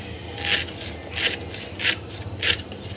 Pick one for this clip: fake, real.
real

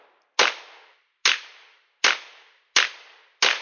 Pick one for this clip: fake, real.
real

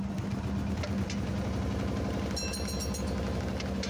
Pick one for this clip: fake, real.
real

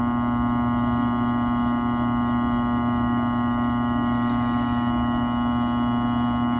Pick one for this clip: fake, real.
real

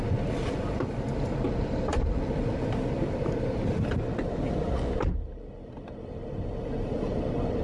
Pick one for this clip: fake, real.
real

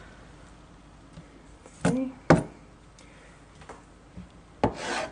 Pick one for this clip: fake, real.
real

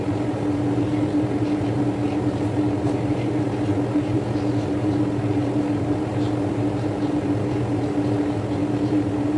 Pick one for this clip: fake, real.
fake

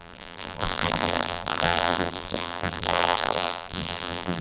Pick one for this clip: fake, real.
fake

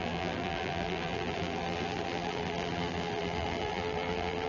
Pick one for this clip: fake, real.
fake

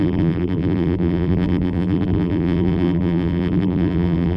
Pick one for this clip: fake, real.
fake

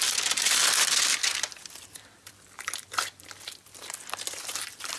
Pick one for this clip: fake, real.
fake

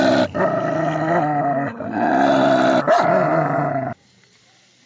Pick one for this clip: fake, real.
real